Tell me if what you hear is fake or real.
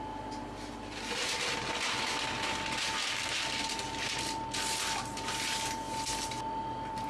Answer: real